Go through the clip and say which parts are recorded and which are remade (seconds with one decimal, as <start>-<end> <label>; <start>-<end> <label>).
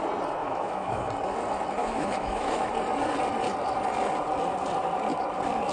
0.0-0.4 recorded; 0.4-1.1 remade; 1.1-1.8 recorded; 1.8-2.7 remade; 2.7-5.7 recorded